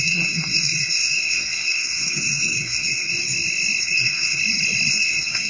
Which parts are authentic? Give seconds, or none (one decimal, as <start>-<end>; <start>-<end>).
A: 3.1-3.8; 4.4-4.9